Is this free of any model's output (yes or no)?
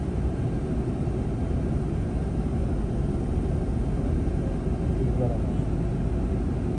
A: yes